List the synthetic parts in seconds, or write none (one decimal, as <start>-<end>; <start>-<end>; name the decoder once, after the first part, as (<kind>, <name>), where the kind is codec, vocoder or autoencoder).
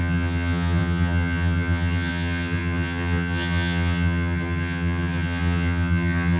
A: 0.0-6.4 (vocoder, HiFi-GAN)